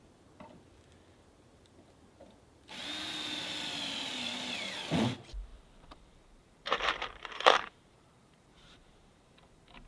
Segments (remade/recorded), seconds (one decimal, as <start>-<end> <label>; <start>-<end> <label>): 0.0-5.5 recorded; 5.5-9.9 remade